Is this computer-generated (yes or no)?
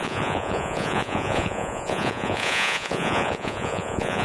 yes